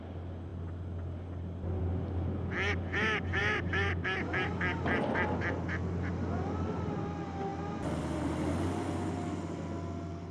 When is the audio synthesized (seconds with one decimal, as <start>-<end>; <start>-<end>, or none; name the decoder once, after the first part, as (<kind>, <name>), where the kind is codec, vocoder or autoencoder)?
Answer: none

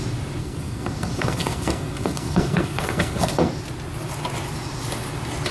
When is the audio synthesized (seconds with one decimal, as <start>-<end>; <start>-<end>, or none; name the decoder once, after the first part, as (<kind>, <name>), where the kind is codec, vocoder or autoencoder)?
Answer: 0.4-3.5 (codec, SNAC)

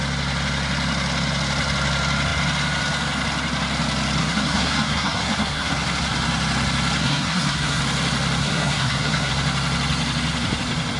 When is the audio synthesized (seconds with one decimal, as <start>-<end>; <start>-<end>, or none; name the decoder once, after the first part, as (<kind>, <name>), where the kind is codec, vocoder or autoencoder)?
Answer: 4.2-5.7 (codec, SNAC); 7.0-7.8; 8.4-9.3

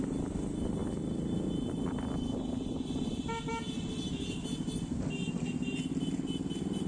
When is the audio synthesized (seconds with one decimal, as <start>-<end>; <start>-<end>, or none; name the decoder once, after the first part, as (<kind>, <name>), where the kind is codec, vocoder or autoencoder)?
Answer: none

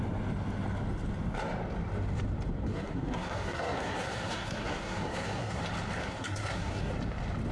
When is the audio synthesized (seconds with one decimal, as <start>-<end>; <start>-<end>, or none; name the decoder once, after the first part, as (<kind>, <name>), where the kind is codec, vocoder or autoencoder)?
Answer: 2.7-5.6 (codec, SNAC); 6.0-6.9

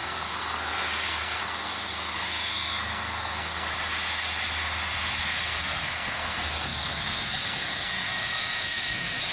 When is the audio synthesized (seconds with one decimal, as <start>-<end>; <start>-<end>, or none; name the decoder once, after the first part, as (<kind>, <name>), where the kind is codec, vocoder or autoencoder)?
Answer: 0.0-3.7 (codec, SNAC); 5.4-9.3

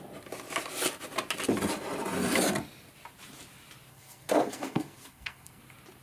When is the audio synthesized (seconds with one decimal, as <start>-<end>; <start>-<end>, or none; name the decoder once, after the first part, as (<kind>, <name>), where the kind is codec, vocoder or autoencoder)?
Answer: 3.9-5.6 (codec, SNAC)

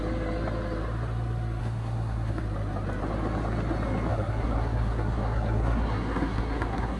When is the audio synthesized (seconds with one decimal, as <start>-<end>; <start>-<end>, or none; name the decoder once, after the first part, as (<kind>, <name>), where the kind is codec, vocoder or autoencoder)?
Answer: 1.6-2.4 (codec, SNAC); 4.1-7.0